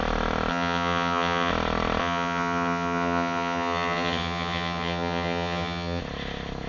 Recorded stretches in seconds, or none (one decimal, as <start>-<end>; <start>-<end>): 0.0-0.5; 1.5-2.0; 6.0-6.7